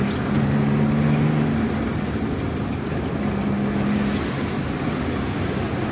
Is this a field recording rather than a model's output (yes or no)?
yes